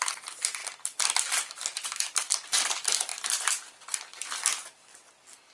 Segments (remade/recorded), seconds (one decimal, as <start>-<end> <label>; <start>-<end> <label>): 0.0-5.5 recorded